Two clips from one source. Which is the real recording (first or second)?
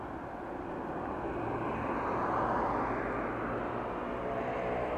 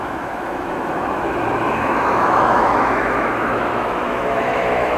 first